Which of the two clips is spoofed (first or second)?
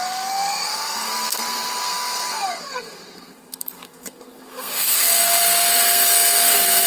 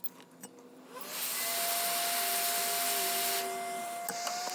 first